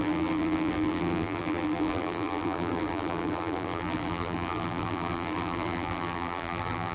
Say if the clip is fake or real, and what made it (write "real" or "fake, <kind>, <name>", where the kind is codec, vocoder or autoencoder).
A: fake, vocoder, BigVGAN v2